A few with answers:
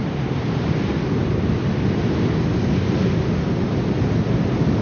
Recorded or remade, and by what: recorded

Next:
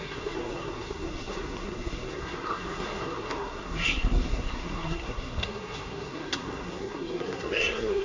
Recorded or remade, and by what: remade, codec, SNAC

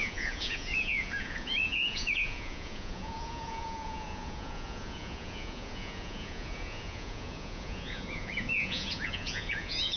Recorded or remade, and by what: remade, vocoder, Vocos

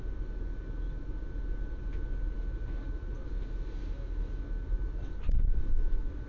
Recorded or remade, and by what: recorded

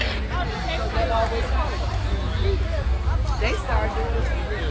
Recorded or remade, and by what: recorded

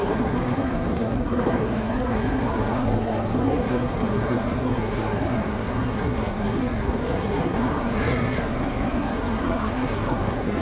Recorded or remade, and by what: remade, codec, SNAC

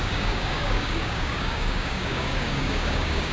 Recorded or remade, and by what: remade, codec, DAC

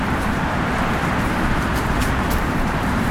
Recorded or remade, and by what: remade, vocoder, BigVGAN v2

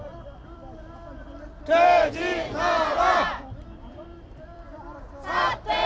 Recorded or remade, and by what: remade, vocoder, BigVGAN v2